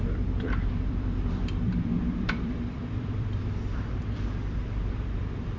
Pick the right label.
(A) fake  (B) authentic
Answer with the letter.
A